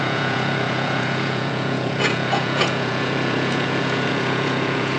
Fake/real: fake